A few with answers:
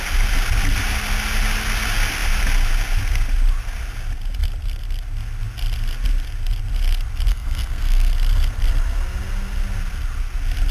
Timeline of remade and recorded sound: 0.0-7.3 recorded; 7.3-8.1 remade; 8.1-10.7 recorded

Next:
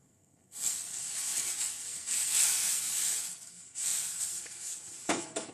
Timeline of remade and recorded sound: 0.0-5.5 remade

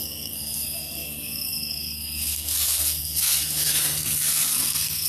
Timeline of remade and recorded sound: 0.0-5.1 remade

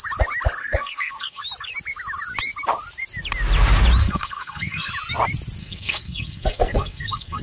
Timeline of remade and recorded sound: 0.0-0.6 recorded; 0.6-1.4 remade; 1.4-4.0 recorded; 4.0-4.9 remade; 4.9-5.6 recorded; 5.6-7.4 remade

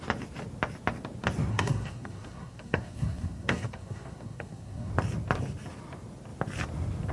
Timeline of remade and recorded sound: 0.0-1.5 recorded; 1.5-4.9 remade; 4.9-7.1 recorded